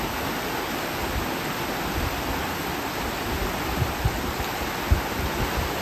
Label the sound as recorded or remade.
recorded